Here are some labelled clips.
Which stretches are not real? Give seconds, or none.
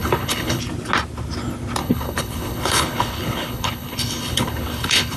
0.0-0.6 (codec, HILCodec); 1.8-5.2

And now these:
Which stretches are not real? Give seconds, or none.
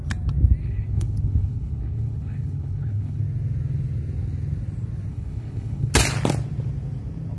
0.6-3.2 (codec, HILCodec); 5.1-5.9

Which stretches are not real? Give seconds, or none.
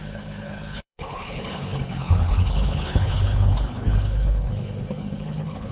0.0-5.7 (codec, HILCodec)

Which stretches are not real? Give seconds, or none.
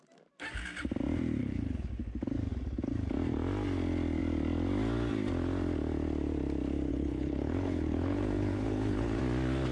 1.4-1.9 (codec, HILCodec); 6.9-9.2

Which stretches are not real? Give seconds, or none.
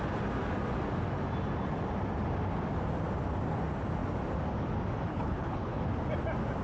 5.1-5.8 (codec, HILCodec)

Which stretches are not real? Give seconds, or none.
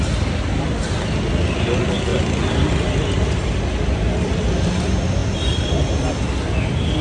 none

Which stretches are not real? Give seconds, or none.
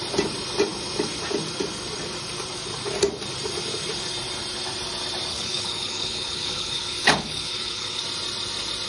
5.3-8.0 (codec, HILCodec)